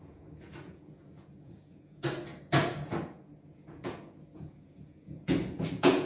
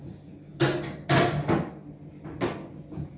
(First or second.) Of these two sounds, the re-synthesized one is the first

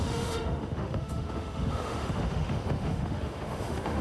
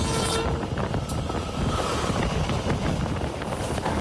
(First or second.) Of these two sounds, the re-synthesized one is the first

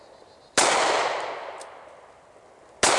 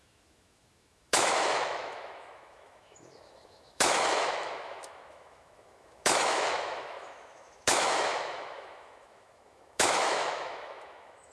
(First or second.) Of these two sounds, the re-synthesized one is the second